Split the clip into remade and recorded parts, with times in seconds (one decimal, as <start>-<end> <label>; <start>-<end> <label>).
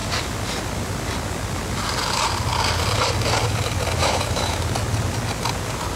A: 0.0-4.0 recorded; 4.0-4.6 remade; 4.6-6.0 recorded